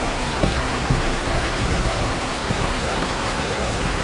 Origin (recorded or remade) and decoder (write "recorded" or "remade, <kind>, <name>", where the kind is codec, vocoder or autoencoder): remade, codec, SNAC